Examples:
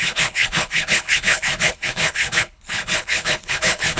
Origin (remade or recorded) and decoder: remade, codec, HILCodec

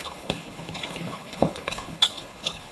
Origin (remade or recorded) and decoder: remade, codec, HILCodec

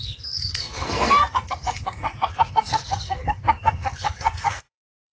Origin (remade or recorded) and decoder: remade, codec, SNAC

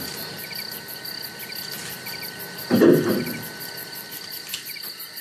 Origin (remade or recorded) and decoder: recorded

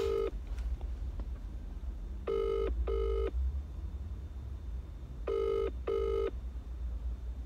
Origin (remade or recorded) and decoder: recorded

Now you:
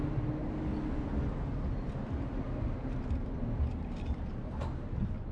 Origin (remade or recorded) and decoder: recorded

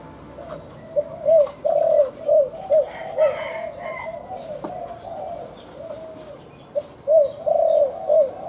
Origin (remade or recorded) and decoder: recorded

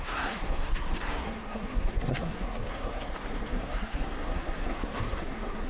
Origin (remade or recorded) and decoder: remade, codec, SNAC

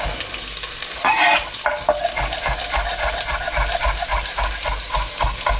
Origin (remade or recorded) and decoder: recorded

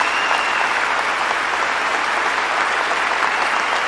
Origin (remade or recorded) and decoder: recorded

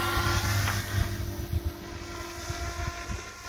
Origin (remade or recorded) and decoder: recorded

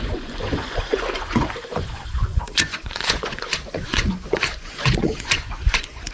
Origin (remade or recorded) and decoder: remade, vocoder, Vocos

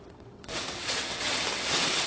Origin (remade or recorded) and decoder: remade, vocoder, WaveNeXt